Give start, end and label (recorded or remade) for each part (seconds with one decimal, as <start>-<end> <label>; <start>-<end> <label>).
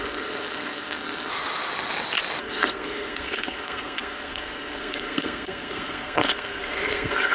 0.0-1.3 remade; 1.3-2.4 recorded; 2.4-7.3 remade